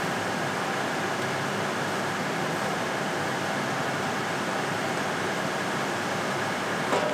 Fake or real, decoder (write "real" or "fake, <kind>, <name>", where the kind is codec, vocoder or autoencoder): real